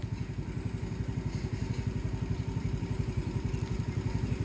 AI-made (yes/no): no